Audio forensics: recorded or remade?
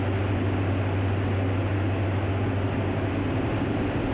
recorded